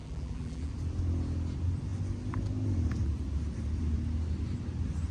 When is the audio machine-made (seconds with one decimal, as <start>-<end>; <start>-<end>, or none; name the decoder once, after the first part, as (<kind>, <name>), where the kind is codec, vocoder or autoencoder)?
0.0-0.7 (vocoder, BigVGAN v2)